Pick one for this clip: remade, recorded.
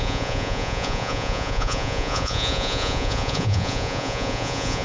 remade